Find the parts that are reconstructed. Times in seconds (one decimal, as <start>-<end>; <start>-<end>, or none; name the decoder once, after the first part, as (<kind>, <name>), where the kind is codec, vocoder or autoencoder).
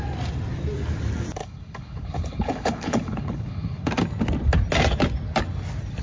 1.4-3.9 (codec, HILCodec)